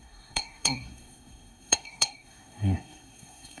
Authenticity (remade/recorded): remade